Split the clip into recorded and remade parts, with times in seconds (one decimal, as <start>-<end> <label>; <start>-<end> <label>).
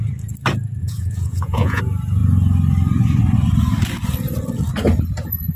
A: 0.0-0.8 recorded; 0.8-1.8 remade; 1.8-5.6 recorded